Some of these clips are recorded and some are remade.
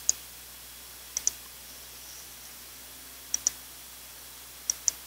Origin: recorded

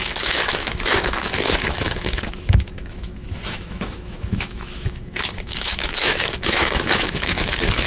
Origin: remade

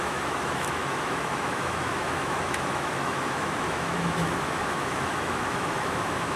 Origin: remade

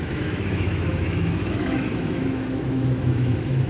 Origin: remade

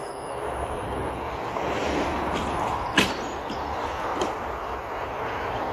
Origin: recorded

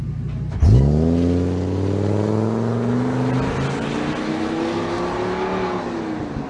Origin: recorded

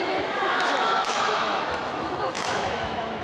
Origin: remade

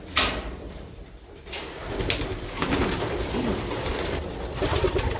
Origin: recorded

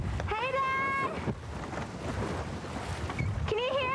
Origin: recorded